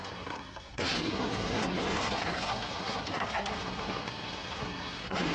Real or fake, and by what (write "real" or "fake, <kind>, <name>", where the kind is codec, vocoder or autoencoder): fake, codec, SNAC